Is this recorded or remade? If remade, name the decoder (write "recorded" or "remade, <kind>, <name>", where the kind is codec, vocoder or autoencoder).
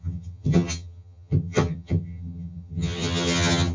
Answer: remade, vocoder, HiFi-GAN